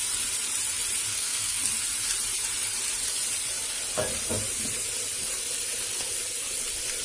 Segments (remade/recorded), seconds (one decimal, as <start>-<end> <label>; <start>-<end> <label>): 0.0-1.1 recorded; 1.1-1.6 remade; 1.6-7.0 recorded